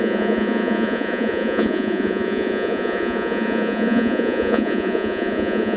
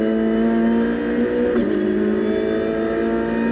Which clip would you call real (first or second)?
second